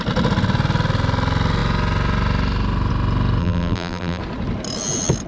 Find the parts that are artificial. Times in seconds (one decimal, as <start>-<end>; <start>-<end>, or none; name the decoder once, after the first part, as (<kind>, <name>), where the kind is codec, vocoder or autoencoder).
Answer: 3.4-4.2 (vocoder, BigVGAN v2)